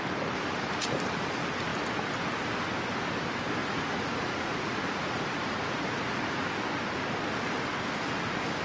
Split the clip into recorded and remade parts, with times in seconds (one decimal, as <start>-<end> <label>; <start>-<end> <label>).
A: 0.0-3.6 recorded; 3.6-6.6 remade; 6.6-8.6 recorded